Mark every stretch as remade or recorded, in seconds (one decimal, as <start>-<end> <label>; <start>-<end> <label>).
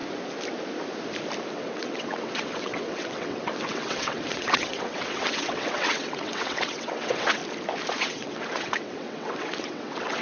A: 0.0-1.5 recorded; 1.5-7.4 remade; 7.4-8.0 recorded; 8.0-10.2 remade